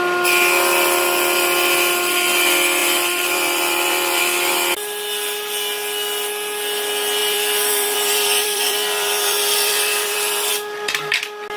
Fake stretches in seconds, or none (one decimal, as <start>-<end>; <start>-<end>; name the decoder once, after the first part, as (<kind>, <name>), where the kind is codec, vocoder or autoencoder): 2.8-4.2 (vocoder, BigVGAN v2); 7.2-10.5